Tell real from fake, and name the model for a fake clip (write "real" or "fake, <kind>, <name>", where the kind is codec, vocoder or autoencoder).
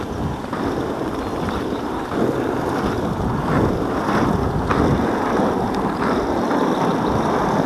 real